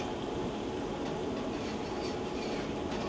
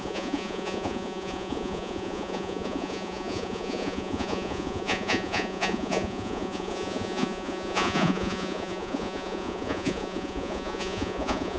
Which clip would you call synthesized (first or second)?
second